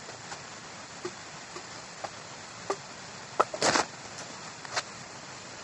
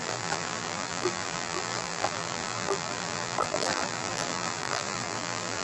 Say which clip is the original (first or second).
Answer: first